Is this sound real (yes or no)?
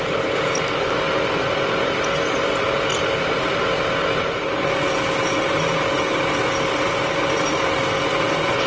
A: yes